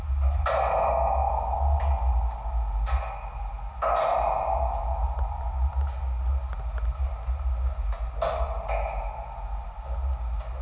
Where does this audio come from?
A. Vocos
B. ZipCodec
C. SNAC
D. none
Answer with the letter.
D